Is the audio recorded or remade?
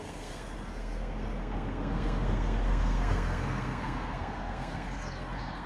remade